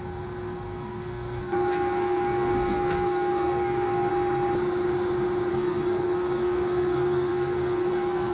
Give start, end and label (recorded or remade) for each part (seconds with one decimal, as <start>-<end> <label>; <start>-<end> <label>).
0.0-4.1 remade; 4.1-5.5 recorded; 5.5-8.3 remade